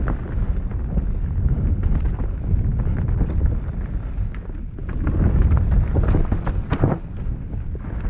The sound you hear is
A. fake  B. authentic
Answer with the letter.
B